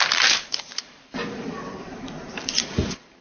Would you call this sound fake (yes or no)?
yes